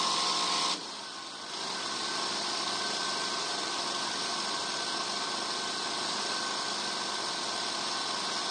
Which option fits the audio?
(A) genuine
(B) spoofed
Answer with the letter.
A